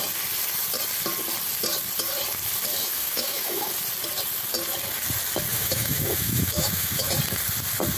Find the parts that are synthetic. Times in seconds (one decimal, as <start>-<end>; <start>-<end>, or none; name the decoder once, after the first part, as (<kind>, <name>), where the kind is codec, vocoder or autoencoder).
2.8-3.7 (autoencoder, DAC-VAE); 5.5-7.1